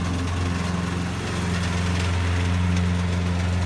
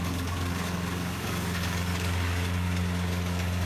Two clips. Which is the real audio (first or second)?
first